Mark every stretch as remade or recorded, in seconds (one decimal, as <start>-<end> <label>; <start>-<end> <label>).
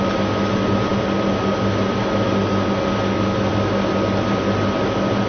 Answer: 0.0-5.3 recorded